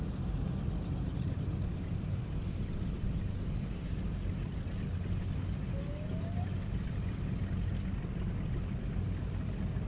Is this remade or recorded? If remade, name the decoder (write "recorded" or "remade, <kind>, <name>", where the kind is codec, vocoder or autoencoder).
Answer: recorded